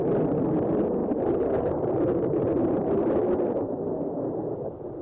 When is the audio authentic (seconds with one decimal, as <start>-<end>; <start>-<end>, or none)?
0.0-1.0; 3.2-5.0